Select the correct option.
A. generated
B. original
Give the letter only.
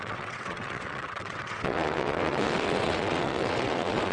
A